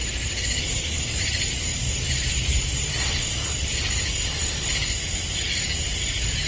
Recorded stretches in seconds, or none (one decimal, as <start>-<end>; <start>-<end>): 0.0-0.6; 1.7-2.3; 2.7-6.5